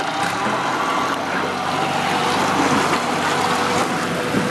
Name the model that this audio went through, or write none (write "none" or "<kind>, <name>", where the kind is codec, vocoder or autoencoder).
none